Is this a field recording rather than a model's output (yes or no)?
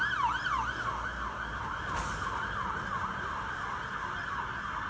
yes